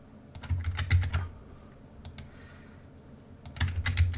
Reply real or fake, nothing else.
real